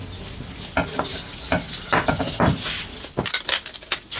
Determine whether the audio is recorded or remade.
recorded